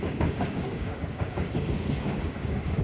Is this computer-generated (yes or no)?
yes